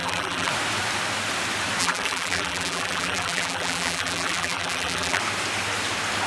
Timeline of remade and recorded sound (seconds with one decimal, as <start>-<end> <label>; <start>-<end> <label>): 0.0-0.5 remade; 0.5-1.8 recorded; 1.8-5.2 remade; 5.2-6.3 recorded